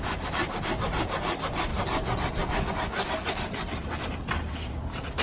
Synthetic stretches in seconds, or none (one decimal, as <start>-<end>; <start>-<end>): none

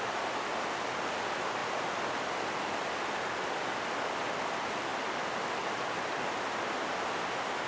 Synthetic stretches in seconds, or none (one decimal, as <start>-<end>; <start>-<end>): none

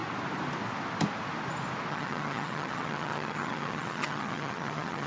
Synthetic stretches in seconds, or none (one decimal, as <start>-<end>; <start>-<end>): 1.9-5.1

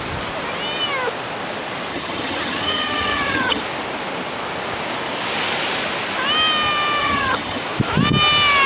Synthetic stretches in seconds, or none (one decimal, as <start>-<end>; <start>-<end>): 1.9-3.6; 7.0-7.6

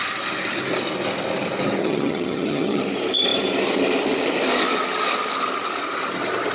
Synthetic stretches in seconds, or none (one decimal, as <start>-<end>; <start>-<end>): 1.8-2.8

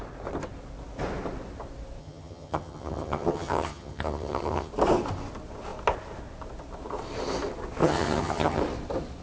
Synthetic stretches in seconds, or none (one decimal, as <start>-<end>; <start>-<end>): 2.0-4.7; 7.8-8.6

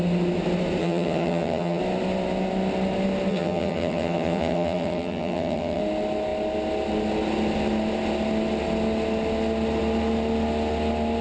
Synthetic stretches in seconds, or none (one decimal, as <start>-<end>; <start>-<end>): 0.8-1.8; 3.3-5.8